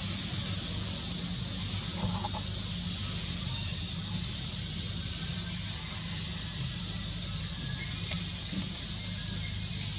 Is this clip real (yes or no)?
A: yes